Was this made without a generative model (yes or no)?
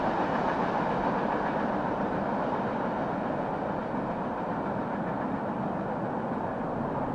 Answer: yes